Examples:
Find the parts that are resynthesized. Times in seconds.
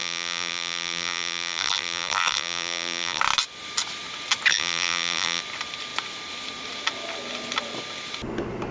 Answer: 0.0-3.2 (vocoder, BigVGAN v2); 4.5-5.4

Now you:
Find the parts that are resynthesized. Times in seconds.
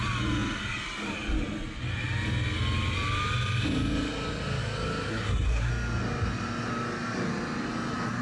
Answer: 5.1-5.7 (codec, SNAC)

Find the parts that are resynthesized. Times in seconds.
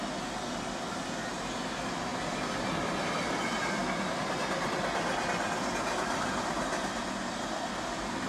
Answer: none